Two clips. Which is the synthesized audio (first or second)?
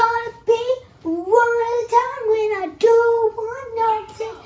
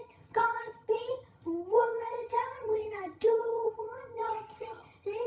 second